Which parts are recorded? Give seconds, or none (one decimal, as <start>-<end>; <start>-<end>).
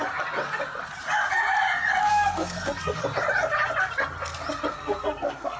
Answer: 0.0-2.1; 3.0-4.7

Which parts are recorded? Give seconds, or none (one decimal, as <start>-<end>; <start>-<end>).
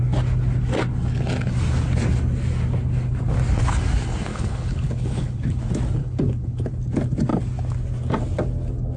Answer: 0.0-4.3; 5.6-6.0; 6.7-9.0